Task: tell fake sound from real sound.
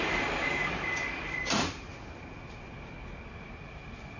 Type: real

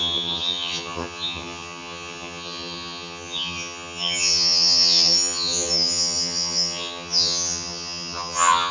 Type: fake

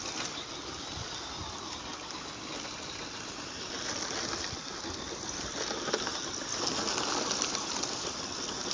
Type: real